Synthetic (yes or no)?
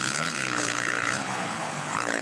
yes